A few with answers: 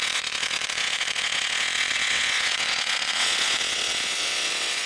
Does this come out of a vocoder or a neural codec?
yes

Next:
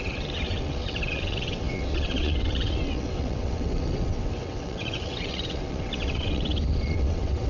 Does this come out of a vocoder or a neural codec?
yes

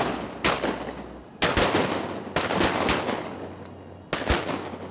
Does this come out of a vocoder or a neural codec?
no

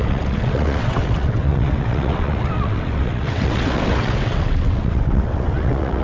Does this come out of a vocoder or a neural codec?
yes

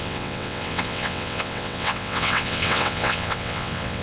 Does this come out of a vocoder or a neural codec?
yes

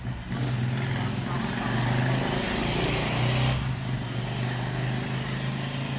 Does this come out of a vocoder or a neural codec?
no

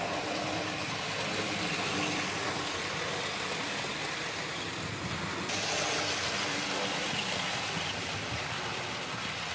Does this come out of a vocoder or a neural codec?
no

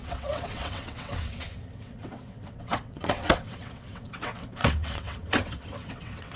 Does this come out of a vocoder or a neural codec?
yes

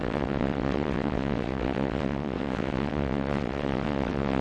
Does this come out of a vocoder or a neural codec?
yes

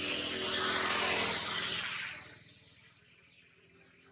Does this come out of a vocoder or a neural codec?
no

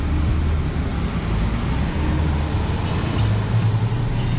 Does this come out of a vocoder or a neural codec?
no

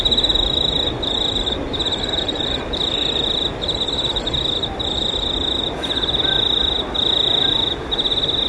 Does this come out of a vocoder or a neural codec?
no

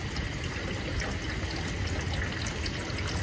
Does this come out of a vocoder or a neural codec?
no